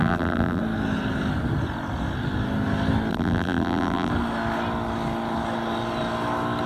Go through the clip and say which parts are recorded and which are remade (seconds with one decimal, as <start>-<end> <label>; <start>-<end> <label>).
0.0-0.6 remade; 0.6-3.1 recorded; 3.1-4.1 remade; 4.1-6.7 recorded